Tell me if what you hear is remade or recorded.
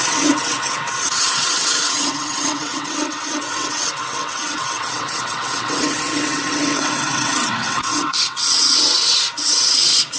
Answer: remade